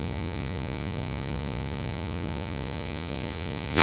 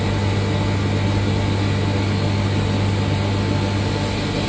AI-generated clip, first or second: first